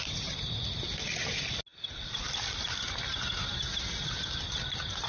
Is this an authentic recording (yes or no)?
yes